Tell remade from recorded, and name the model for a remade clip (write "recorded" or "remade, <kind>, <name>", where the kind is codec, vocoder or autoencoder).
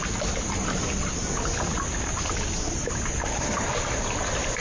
recorded